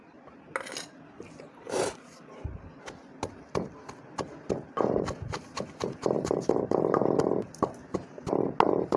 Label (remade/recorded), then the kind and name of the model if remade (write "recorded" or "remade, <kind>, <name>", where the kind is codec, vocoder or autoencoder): recorded